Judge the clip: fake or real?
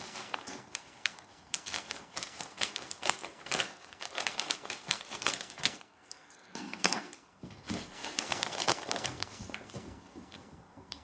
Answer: fake